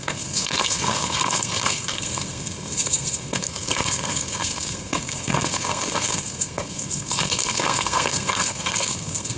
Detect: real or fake fake